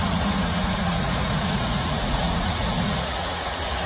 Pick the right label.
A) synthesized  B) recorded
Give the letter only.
A